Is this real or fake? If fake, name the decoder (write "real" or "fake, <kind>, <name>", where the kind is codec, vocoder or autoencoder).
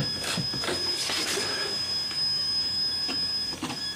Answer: fake, codec, DAC